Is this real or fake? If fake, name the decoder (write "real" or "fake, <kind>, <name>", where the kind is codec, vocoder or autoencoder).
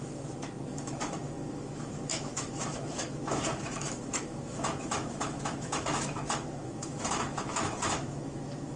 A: fake, autoencoder, DAC-VAE